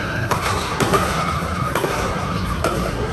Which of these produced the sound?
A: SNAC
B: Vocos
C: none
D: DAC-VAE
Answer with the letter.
A